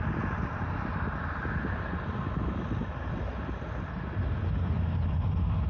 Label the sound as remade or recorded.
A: recorded